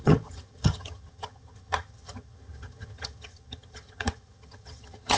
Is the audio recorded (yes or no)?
no